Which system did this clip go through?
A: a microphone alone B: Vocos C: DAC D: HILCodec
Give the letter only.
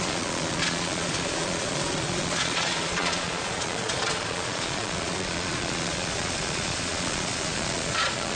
B